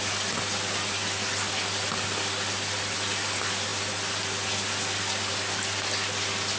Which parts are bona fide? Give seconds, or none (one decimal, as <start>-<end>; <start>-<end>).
0.0-6.6